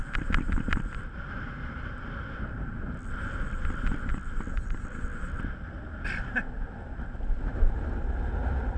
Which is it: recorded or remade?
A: recorded